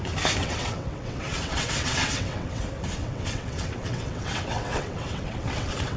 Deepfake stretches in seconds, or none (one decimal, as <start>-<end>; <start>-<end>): 0.4-2.6; 3.0-6.0

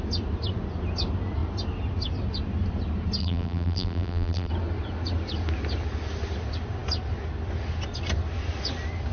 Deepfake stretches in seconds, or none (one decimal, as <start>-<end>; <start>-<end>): 3.2-4.5

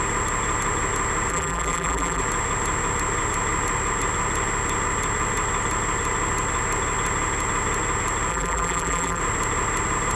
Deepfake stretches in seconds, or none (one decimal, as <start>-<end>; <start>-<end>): 1.3-2.2; 8.3-9.2

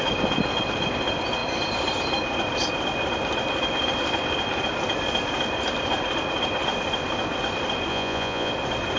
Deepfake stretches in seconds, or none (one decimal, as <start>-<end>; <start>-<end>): 7.9-8.5

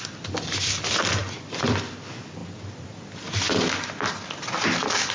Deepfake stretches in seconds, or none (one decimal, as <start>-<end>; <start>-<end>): 1.2-1.8